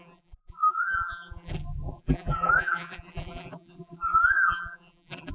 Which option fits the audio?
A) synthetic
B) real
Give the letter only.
A